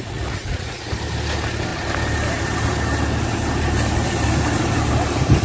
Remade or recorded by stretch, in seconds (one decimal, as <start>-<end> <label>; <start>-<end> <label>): 0.0-0.9 remade; 0.9-5.4 recorded